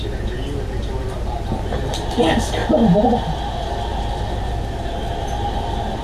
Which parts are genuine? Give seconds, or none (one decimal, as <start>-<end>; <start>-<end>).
0.0-6.0